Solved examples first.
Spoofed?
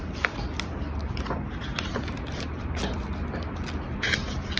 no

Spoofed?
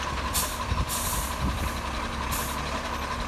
no